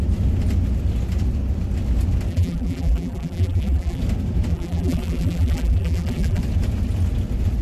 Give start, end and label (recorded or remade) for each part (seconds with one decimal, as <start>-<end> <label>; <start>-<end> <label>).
0.0-2.3 recorded; 2.3-4.0 remade; 4.0-4.5 recorded; 4.5-6.4 remade; 6.4-7.6 recorded